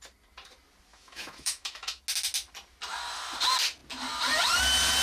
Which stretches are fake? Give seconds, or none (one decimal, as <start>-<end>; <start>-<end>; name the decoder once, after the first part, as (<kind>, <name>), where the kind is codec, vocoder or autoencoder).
0.9-2.0 (autoencoder, DAC-VAE)